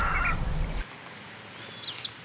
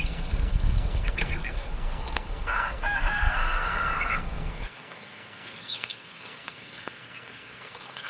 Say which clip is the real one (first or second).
first